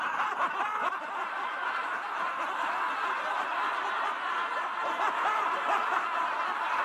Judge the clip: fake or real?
real